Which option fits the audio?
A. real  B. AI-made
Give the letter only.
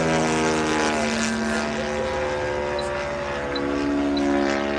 A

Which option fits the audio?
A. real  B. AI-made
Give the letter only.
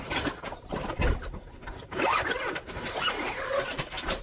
A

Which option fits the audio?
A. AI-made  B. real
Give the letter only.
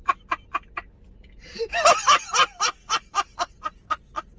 B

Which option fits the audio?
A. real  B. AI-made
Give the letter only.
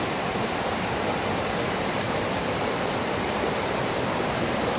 A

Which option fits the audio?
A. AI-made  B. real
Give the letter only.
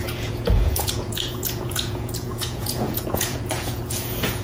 A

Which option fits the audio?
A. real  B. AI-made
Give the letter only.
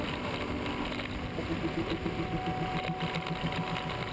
A